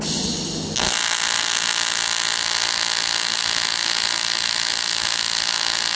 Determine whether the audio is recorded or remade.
recorded